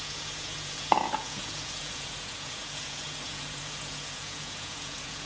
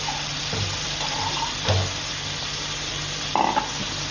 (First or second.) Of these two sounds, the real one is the second